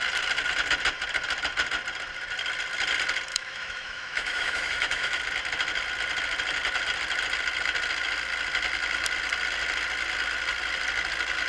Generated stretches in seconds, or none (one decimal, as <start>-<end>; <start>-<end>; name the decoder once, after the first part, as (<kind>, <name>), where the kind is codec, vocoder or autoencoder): 3.3-5.2 (autoencoder, DAC-VAE)